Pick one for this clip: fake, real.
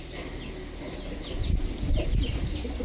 real